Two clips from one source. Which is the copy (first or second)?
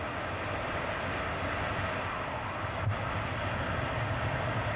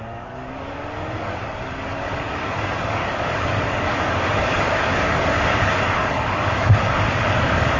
second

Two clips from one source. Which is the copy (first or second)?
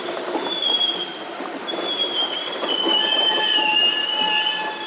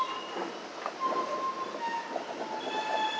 first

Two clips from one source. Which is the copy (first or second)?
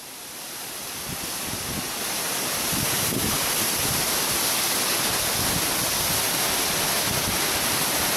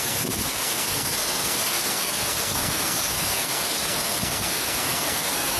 second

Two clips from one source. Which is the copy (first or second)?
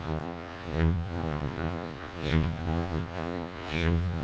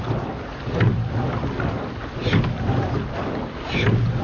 first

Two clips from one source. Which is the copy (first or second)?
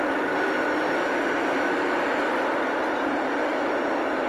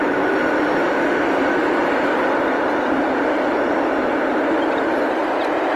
second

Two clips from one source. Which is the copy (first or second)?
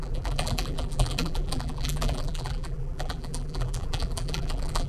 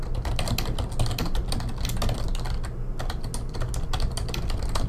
first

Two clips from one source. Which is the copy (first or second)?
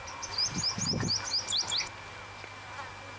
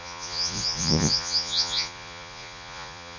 second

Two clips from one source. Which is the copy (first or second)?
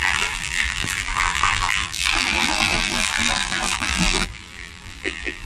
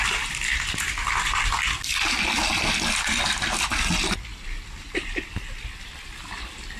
first